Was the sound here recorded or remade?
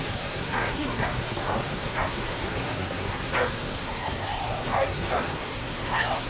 remade